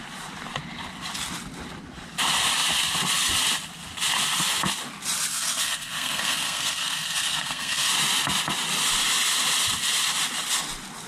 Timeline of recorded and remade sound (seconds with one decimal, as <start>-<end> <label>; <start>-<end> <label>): 0.0-5.3 recorded; 5.3-7.9 remade; 7.9-11.1 recorded